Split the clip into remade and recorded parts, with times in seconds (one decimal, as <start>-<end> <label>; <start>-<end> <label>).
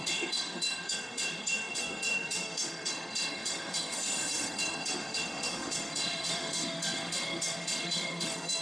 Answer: 0.0-8.6 remade